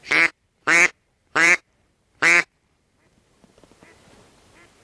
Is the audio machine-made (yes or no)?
yes